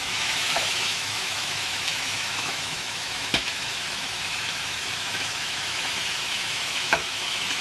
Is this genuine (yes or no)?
no